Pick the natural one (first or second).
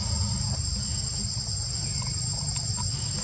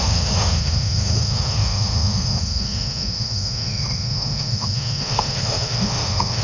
first